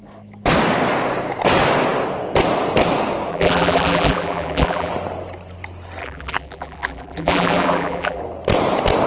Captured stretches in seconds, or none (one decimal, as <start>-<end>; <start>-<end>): 0.0-3.3; 4.9-6.0; 8.2-9.1